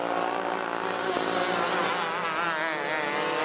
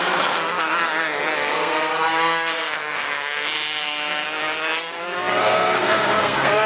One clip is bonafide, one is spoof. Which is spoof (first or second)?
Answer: second